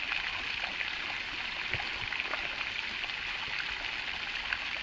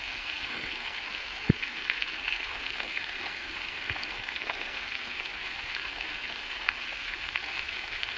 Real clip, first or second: first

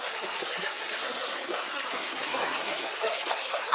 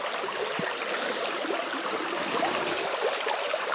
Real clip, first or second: second